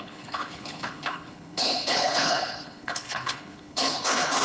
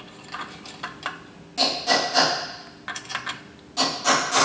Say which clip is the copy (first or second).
first